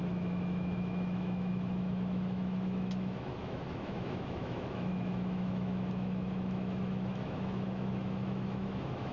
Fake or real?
fake